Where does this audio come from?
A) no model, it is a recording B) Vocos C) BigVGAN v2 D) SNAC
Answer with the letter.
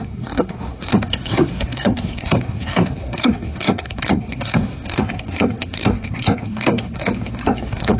D